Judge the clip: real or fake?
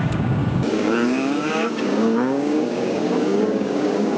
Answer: fake